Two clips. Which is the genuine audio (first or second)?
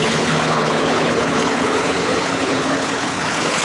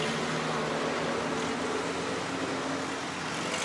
second